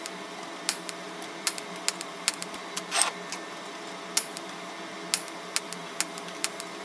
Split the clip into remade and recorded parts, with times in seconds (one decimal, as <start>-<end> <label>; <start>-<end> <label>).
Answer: 0.0-6.8 recorded